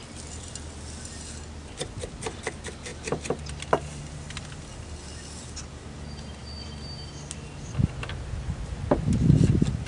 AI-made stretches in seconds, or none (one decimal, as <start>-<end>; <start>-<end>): none